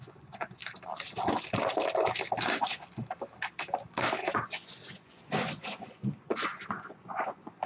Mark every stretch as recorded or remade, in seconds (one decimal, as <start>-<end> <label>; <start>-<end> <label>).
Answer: 0.0-0.6 remade; 0.6-4.2 recorded; 4.2-7.7 remade